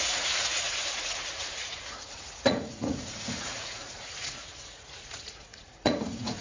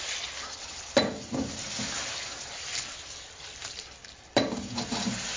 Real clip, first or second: second